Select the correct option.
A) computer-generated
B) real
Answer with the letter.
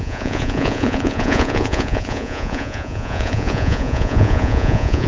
A